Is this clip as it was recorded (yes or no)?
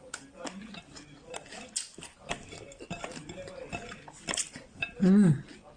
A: yes